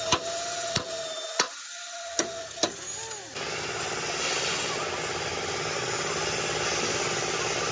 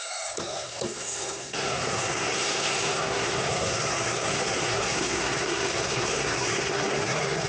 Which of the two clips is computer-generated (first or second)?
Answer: second